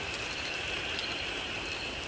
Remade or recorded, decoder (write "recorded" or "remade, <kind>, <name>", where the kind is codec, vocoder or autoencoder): recorded